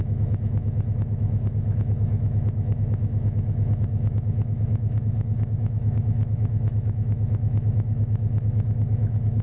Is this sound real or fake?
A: fake